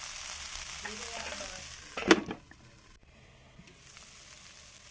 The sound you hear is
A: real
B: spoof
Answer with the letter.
A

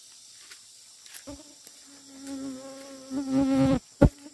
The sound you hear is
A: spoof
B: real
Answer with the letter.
B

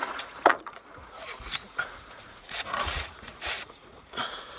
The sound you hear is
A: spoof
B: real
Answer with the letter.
A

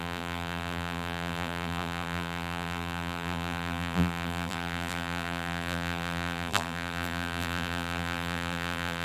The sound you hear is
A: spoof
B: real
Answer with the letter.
A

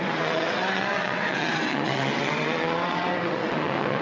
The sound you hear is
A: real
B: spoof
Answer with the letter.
B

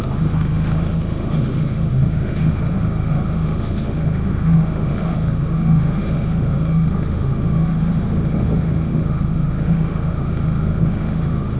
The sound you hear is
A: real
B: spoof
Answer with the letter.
B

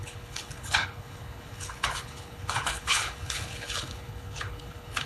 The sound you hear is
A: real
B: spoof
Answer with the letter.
B